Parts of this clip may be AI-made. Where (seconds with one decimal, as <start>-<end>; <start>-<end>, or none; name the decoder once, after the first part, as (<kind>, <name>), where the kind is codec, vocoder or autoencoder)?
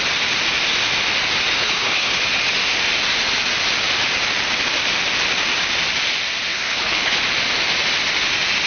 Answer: 1.6-2.2 (codec, HILCodec); 6.5-7.2